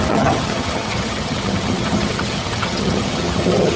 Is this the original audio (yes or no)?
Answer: no